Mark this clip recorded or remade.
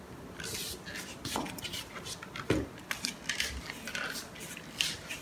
recorded